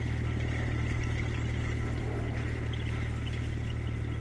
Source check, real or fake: real